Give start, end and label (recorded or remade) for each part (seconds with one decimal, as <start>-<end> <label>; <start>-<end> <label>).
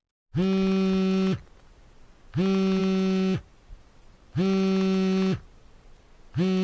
0.0-6.6 recorded